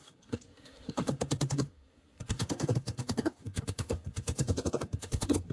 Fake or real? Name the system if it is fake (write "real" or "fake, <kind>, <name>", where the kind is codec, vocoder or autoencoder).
fake, codec, SNAC